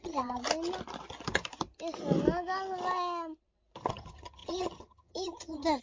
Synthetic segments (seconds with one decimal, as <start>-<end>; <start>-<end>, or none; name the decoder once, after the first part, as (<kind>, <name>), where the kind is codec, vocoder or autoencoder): 0.0-0.4 (vocoder, HiFi-GAN); 3.9-5.8

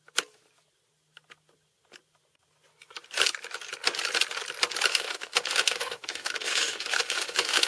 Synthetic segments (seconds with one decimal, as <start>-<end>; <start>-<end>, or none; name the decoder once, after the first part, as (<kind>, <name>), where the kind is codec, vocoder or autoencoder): 4.9-7.7 (autoencoder, DAC-VAE)